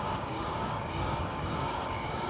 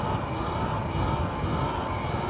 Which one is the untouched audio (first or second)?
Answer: second